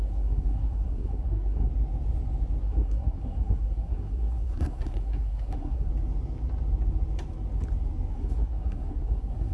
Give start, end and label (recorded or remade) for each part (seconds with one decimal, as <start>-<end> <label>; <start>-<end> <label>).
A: 0.0-1.7 remade; 1.7-2.6 recorded; 2.6-5.9 remade; 5.9-8.1 recorded; 8.1-9.5 remade